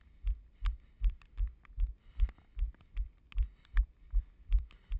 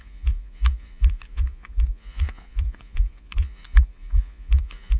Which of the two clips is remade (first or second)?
second